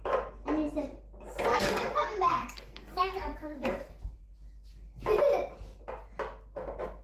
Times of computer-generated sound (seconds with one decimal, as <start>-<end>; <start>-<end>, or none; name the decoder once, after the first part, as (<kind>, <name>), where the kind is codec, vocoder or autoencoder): 1.5-3.9 (codec, SNAC)